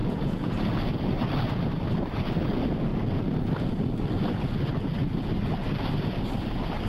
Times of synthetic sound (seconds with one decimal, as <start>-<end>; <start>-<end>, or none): 0.0-0.5